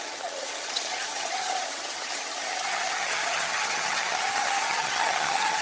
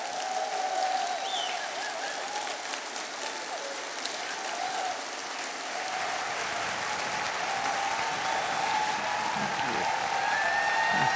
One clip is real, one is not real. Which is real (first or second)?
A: second